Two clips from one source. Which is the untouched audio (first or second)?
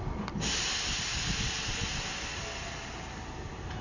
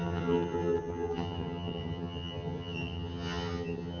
first